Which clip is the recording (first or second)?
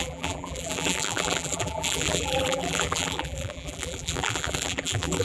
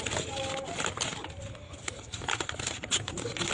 second